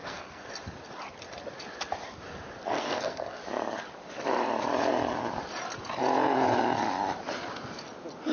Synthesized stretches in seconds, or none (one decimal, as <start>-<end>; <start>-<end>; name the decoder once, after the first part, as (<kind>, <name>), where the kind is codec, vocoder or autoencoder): 0.0-0.5 (codec, SNAC); 2.7-3.4